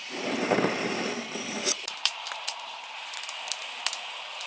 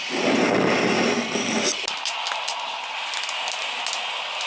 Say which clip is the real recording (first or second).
second